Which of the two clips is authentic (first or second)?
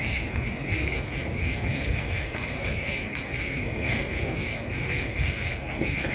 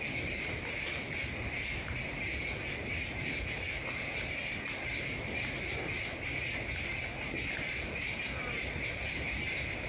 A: second